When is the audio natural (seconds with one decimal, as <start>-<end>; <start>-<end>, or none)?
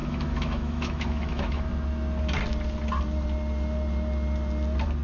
1.7-5.0